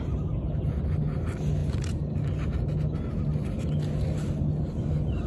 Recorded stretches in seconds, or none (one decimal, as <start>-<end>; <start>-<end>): 0.0-5.3